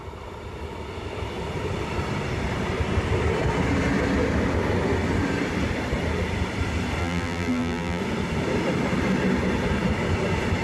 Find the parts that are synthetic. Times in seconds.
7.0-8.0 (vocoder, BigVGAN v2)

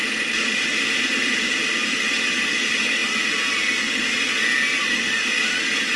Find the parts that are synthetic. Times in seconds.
none

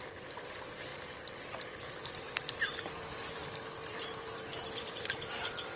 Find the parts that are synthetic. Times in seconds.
0.0-0.9 (vocoder, BigVGAN v2); 1.7-3.4; 3.9-5.8